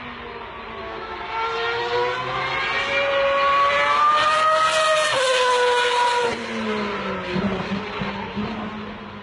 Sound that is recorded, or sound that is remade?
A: recorded